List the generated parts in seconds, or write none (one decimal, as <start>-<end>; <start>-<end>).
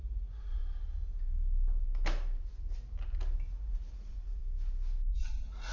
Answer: 0.0-0.6; 3.5-4.4; 5.1-5.7